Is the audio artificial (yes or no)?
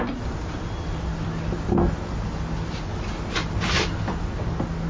no